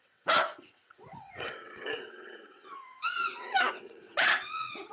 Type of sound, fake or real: fake